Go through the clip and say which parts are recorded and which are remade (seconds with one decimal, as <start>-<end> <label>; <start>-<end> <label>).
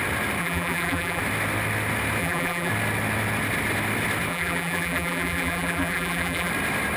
0.0-0.4 recorded; 0.4-1.2 remade; 1.2-2.2 recorded; 2.2-2.7 remade; 2.7-4.3 recorded; 4.3-6.5 remade; 6.5-7.0 recorded